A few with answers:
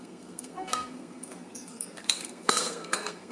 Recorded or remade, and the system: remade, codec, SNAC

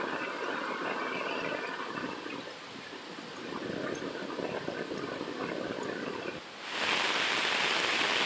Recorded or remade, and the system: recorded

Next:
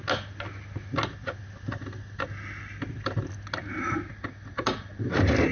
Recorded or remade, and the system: recorded